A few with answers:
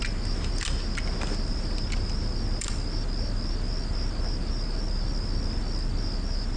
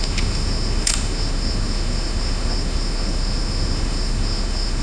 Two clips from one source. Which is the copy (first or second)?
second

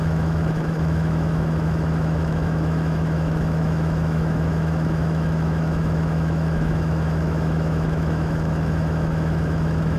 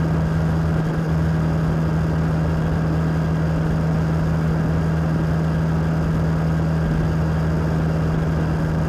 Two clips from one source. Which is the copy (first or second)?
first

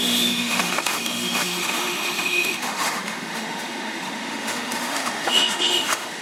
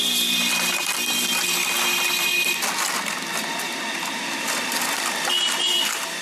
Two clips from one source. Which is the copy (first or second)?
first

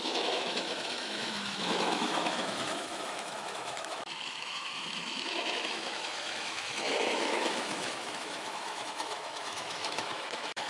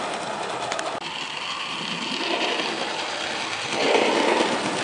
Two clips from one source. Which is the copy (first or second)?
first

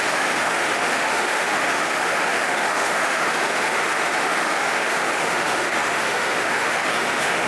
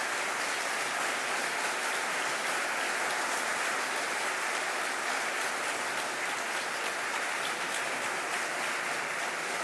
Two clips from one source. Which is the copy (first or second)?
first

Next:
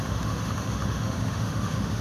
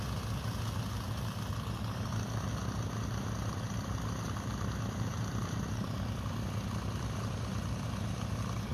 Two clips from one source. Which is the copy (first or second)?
first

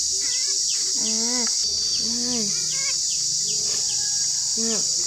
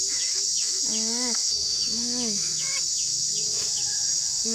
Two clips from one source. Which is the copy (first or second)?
second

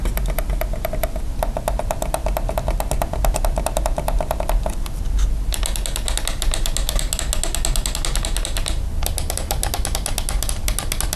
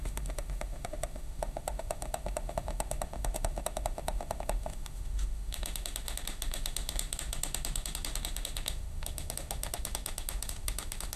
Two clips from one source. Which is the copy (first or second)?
second